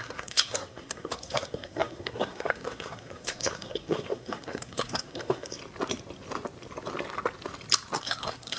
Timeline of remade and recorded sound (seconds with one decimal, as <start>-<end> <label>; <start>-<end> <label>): 0.0-5.6 remade; 5.6-8.0 recorded; 8.0-8.6 remade